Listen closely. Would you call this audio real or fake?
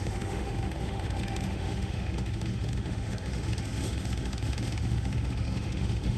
fake